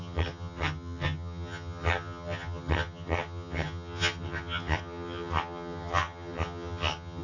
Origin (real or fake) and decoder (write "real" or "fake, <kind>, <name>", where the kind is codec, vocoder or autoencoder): fake, vocoder, HiFi-GAN